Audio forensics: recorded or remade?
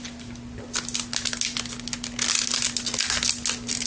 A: recorded